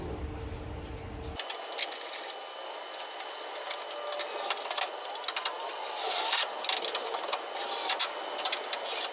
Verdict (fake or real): real